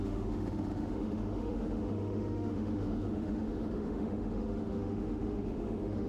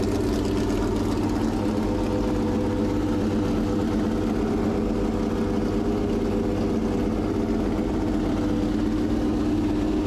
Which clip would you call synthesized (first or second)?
first